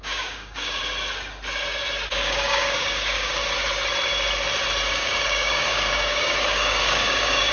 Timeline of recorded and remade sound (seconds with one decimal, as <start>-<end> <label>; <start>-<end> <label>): 0.0-0.8 remade; 0.8-2.1 recorded; 2.1-3.4 remade; 3.4-4.9 recorded; 4.9-7.5 remade